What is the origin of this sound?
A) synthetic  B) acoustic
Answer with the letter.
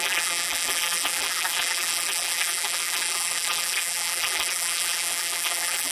A